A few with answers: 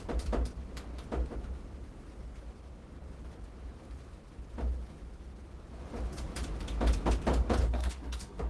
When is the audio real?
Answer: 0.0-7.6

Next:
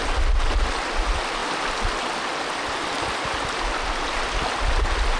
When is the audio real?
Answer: 0.0-5.2

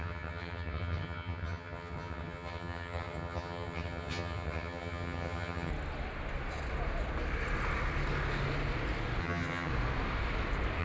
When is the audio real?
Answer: 5.7-9.2; 9.7-10.8

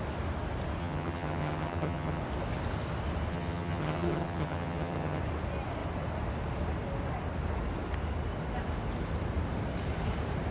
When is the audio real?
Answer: 0.0-0.8; 2.2-3.3; 5.2-10.5

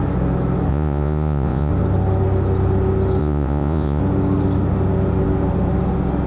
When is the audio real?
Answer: 0.0-0.7; 1.7-3.2; 4.0-6.3

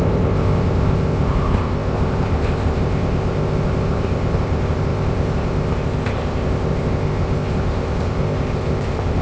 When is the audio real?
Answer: none